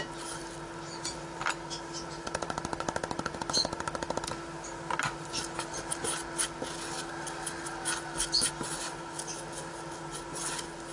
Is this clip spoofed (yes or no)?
no